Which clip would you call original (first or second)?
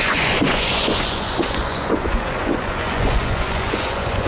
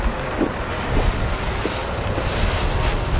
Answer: second